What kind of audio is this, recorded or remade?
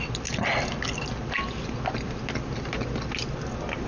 recorded